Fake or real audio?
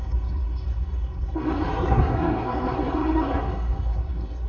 fake